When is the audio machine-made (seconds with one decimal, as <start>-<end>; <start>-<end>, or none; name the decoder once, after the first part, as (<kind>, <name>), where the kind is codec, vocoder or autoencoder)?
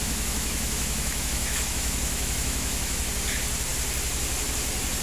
0.0-3.0 (autoencoder, DAC-VAE)